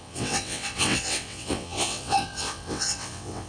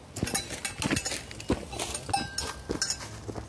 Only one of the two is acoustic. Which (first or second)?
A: second